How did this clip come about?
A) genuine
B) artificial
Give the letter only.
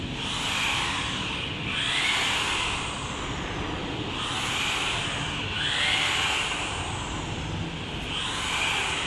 A